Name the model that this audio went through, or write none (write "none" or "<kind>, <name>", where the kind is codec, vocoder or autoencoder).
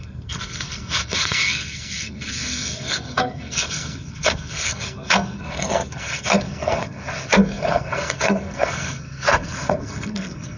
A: codec, SNAC